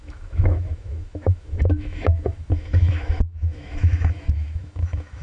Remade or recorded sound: remade